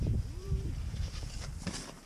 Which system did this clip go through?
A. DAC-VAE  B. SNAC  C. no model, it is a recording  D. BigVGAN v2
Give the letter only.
D